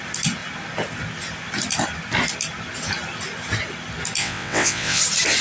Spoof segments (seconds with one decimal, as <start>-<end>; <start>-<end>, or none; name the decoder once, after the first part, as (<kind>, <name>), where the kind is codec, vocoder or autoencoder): 4.2-5.0 (vocoder, WaveNeXt)